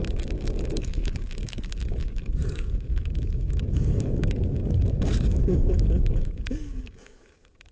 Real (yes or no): no